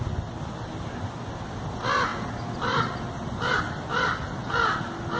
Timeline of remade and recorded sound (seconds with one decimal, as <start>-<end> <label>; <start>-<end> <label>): 0.0-5.2 recorded